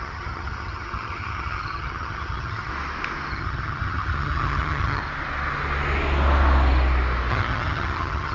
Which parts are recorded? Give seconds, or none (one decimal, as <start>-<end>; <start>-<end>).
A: 2.7-3.3; 5.0-7.3